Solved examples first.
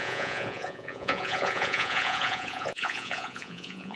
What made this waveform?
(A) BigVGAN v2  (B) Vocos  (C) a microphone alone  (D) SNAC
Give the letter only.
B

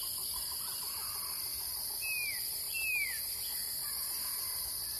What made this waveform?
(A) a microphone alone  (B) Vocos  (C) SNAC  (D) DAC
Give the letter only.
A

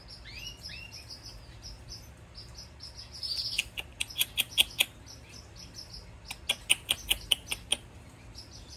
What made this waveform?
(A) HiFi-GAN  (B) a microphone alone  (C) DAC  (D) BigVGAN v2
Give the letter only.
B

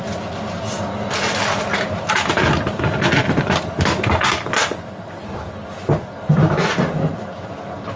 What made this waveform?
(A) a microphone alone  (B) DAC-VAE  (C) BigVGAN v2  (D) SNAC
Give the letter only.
A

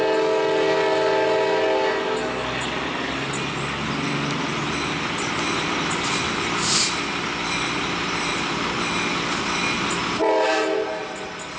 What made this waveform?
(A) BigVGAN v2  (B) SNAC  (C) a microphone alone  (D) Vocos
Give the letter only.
C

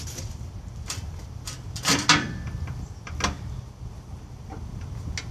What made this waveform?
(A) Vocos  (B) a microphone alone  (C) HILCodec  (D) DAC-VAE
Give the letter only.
B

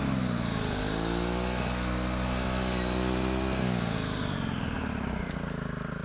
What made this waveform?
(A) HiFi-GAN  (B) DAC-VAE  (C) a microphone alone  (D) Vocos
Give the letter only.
C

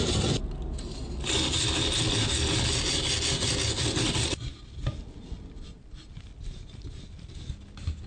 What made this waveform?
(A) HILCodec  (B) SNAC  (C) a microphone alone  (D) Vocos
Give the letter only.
C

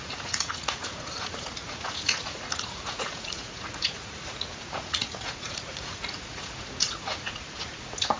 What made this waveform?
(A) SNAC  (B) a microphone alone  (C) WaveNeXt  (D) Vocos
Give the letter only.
D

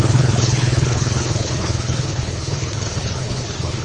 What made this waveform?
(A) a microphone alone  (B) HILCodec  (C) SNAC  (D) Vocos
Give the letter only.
B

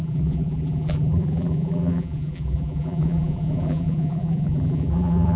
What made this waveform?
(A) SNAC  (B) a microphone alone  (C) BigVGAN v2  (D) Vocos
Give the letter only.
C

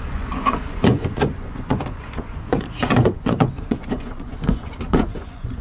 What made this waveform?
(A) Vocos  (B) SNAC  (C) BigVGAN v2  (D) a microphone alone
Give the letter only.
A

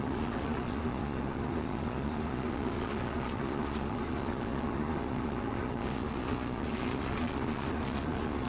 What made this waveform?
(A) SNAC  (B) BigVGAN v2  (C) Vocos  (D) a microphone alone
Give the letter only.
C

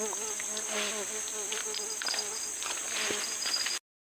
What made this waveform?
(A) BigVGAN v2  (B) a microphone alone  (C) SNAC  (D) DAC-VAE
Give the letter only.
B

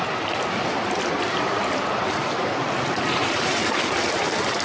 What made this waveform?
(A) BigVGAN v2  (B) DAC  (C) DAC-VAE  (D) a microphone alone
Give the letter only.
A